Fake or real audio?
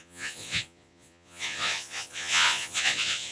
fake